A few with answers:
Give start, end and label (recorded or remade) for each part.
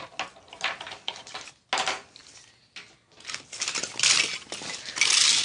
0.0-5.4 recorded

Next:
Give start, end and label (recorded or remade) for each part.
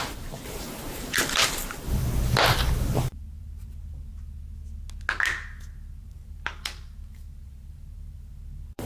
0.0-2.0 remade; 2.0-3.4 recorded; 3.4-4.1 remade; 4.1-6.0 recorded; 6.0-8.9 remade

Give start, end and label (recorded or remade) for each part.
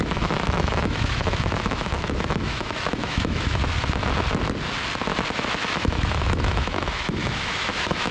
0.0-3.6 remade; 3.6-5.5 recorded; 5.5-8.1 remade